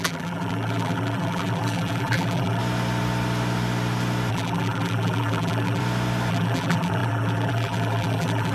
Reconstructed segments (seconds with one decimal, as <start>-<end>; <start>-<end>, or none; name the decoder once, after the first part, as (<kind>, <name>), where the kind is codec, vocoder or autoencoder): 0.0-2.6 (vocoder, BigVGAN v2); 4.3-5.8; 6.3-8.5

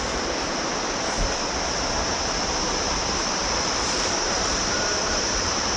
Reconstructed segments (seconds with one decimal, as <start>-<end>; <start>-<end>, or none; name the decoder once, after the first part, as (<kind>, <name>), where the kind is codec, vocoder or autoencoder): 2.1-5.8 (vocoder, BigVGAN v2)